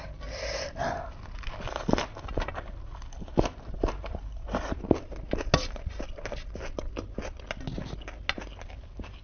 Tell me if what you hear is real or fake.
real